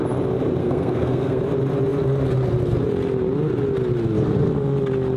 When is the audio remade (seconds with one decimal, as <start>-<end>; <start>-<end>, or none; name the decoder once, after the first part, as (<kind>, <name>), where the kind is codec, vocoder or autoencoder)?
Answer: 0.6-1.4 (codec, SNAC)